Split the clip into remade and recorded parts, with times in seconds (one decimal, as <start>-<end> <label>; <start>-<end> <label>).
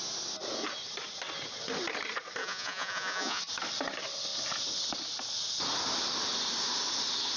0.0-2.4 recorded; 2.4-3.4 remade; 3.4-7.4 recorded